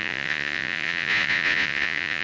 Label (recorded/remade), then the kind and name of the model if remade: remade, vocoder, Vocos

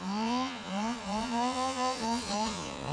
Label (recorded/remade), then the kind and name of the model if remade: remade, vocoder, Vocos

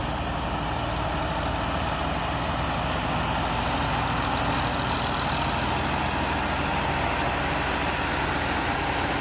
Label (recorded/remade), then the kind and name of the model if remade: recorded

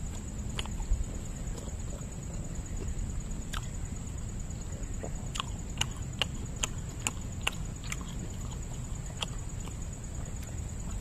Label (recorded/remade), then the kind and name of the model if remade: recorded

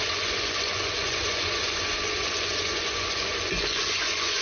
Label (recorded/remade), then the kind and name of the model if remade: remade, vocoder, Vocos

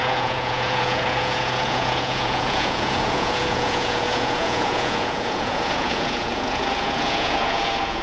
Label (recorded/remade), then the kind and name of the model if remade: remade, vocoder, Vocos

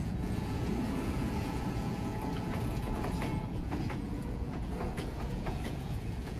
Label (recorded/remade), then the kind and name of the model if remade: remade, vocoder, Vocos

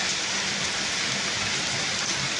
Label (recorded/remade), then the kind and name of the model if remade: recorded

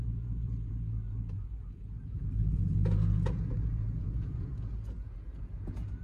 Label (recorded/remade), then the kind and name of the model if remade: remade, vocoder, Vocos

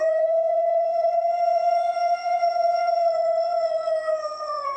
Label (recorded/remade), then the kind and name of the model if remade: remade, vocoder, Vocos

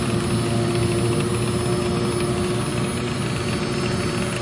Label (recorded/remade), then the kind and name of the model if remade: recorded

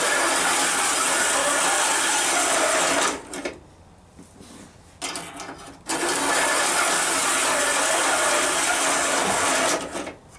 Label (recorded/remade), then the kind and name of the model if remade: recorded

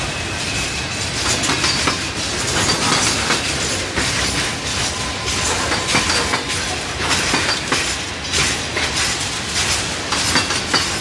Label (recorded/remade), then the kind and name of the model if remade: recorded